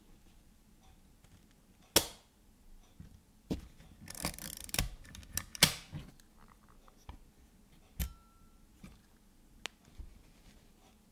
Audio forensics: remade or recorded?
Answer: recorded